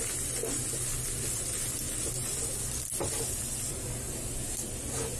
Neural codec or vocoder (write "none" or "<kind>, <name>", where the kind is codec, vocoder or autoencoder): none